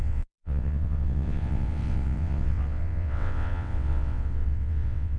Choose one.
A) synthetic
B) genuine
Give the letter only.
A